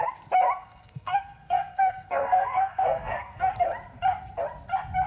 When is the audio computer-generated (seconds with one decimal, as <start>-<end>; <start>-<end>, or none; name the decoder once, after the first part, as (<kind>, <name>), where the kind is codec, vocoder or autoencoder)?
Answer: 0.6-3.7 (codec, SNAC)